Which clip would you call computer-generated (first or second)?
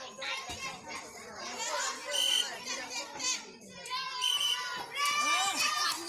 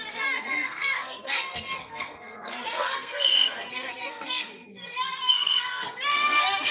second